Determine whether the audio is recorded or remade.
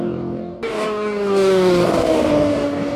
remade